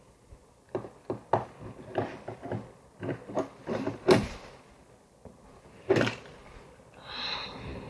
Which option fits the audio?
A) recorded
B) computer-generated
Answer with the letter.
A